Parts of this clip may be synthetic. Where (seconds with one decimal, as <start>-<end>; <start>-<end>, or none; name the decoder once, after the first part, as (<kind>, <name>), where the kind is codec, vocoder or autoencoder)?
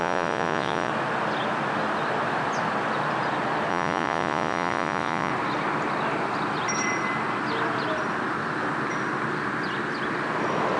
0.0-0.9 (vocoder, Vocos); 3.7-5.3